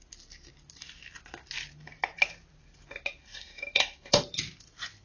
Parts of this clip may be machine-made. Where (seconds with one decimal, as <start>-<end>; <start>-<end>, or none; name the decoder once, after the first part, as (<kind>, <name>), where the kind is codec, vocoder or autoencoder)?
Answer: 3.2-4.2 (codec, SNAC)